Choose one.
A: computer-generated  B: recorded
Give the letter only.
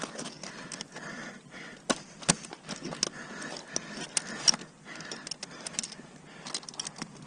B